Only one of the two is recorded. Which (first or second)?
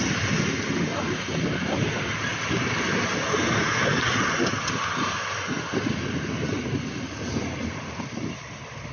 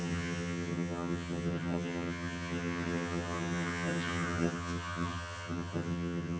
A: first